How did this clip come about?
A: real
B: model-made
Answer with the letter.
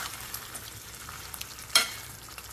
B